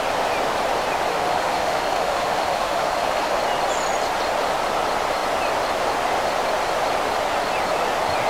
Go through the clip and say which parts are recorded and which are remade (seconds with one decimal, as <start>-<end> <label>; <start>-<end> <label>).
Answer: 0.0-1.1 recorded; 1.1-3.4 remade; 3.4-8.3 recorded